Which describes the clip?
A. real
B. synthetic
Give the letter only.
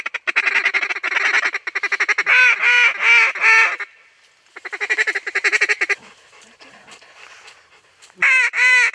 A